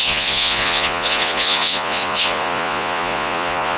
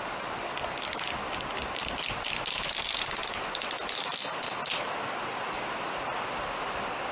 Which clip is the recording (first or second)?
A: second